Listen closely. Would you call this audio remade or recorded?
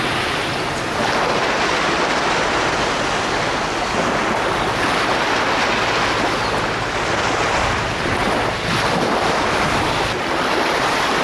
recorded